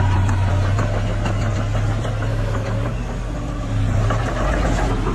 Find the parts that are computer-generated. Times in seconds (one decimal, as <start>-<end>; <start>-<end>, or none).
2.3-3.2